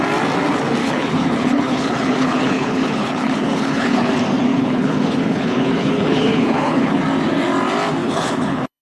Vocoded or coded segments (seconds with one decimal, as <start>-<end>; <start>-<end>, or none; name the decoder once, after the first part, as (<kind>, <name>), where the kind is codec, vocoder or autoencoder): 0.8-4.1 (codec, HILCodec); 4.5-7.0; 8.0-8.8